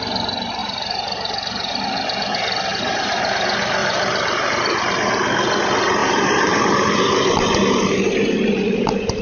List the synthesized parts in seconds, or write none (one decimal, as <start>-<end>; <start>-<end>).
0.6-1.7; 2.7-3.3; 3.8-5.1; 6.0-7.0